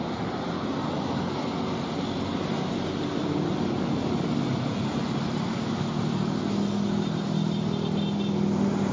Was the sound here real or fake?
real